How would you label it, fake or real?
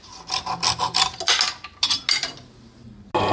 real